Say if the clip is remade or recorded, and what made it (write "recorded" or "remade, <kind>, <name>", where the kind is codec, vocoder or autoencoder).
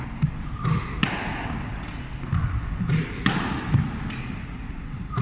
recorded